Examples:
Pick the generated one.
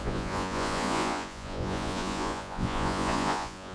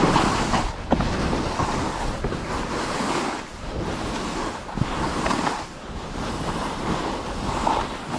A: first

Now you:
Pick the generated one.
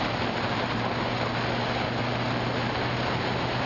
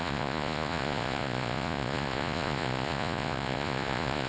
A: second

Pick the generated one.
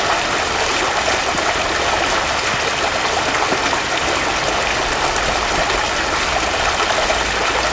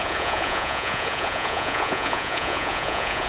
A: second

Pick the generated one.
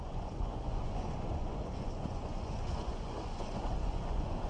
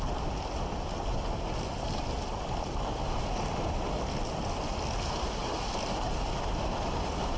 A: first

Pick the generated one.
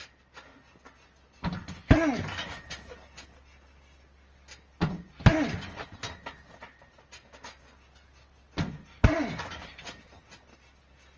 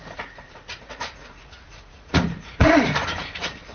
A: second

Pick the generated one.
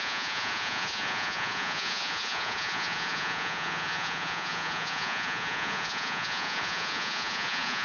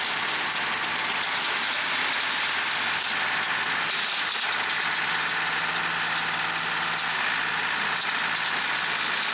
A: first